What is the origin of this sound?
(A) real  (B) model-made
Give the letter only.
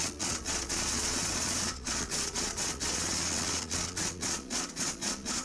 B